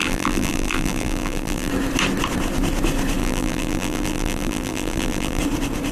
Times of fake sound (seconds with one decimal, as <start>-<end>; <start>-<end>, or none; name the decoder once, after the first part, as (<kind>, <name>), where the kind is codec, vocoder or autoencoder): 0.0-1.7 (vocoder, BigVGAN v2); 3.2-5.4